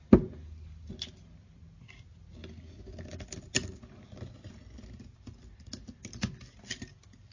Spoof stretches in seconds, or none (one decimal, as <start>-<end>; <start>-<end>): none